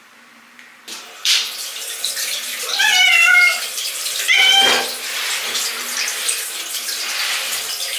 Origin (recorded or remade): remade